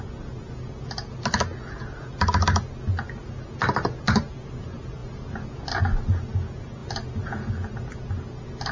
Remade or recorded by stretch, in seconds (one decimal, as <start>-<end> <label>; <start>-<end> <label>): 0.0-8.7 recorded